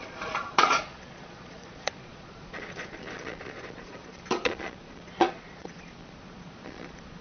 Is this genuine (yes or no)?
no